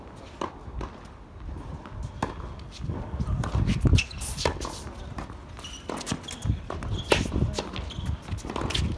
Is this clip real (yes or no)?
yes